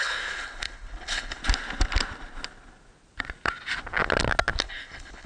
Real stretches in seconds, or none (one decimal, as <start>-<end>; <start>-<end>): 1.4-4.6